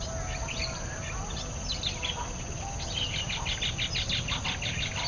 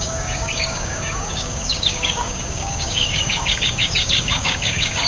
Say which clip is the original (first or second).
first